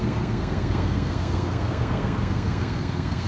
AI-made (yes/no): yes